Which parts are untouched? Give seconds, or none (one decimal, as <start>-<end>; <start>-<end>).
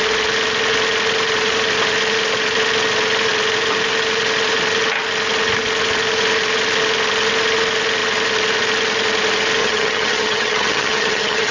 0.0-9.6